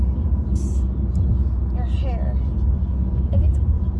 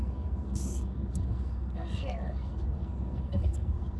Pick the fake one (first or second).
second